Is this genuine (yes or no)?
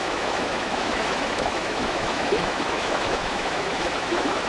no